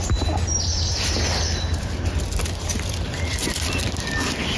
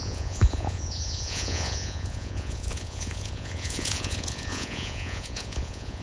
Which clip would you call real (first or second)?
first